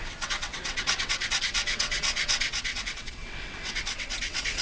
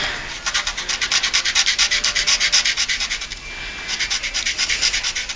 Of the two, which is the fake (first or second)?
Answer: first